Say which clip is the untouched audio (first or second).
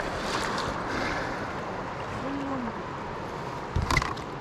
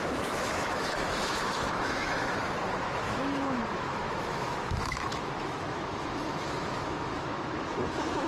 first